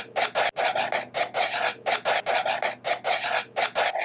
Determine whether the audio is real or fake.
real